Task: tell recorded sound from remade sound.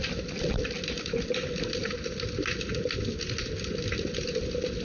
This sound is recorded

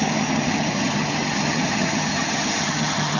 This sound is remade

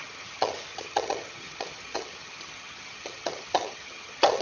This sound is remade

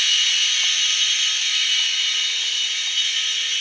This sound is recorded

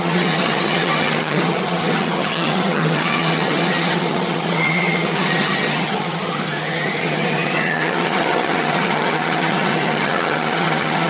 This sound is remade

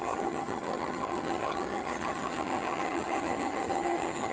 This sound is remade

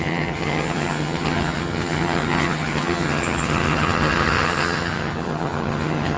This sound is remade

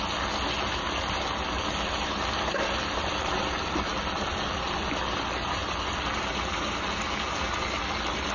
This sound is recorded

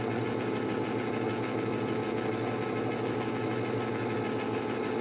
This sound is recorded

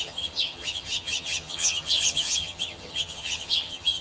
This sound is remade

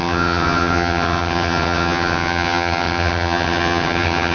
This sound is remade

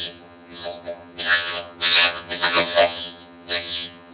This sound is remade